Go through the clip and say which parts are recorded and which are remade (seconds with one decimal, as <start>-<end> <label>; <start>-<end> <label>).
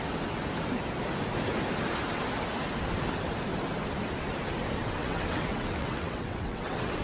0.0-4.8 recorded; 4.8-7.0 remade